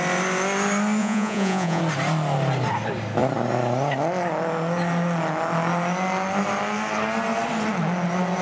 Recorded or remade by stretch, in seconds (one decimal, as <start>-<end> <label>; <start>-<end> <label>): 0.0-1.0 recorded; 1.0-1.8 remade; 1.8-8.4 recorded

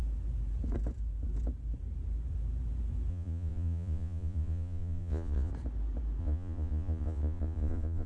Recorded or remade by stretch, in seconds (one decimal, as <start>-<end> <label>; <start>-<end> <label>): 0.0-3.1 recorded; 3.1-5.5 remade; 5.5-6.2 recorded; 6.2-8.1 remade

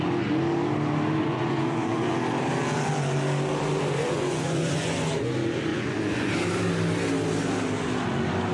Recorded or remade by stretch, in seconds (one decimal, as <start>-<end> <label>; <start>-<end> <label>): 0.0-1.2 recorded; 1.2-2.1 remade; 2.1-4.0 recorded; 4.0-5.3 remade; 5.3-5.7 recorded; 5.7-6.3 remade; 6.3-8.5 recorded